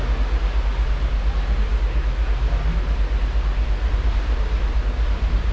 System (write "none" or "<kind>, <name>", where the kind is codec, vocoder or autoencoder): none